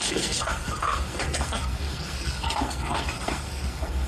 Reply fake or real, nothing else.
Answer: fake